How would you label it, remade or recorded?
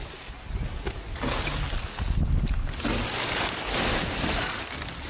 recorded